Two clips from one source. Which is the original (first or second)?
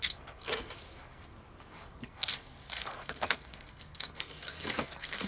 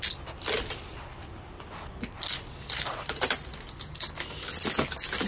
second